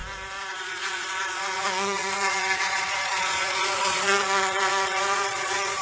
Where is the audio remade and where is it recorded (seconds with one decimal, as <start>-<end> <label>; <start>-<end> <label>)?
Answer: 0.0-0.5 recorded; 0.5-5.8 remade